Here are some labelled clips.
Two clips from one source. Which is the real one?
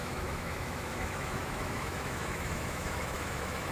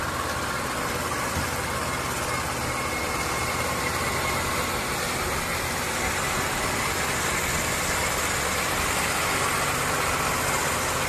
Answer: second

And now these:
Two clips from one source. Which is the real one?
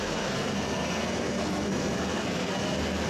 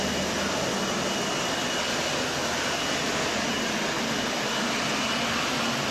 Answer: second